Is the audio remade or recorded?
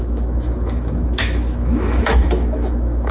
remade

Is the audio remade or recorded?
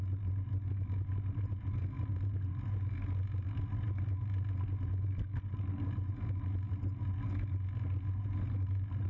recorded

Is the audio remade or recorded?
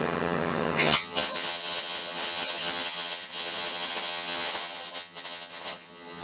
remade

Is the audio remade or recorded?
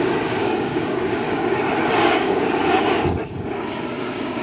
remade